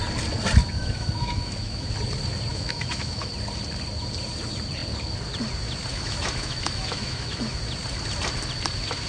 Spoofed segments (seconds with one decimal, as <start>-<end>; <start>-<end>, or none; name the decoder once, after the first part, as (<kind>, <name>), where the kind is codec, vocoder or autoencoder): 0.6-1.9 (autoencoder, DAC-VAE); 2.5-3.3; 5.9-7.6